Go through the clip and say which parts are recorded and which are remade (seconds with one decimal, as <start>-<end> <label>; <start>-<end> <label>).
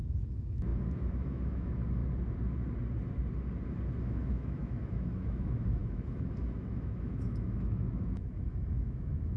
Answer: 0.0-2.0 remade; 2.0-4.0 recorded; 4.0-9.4 remade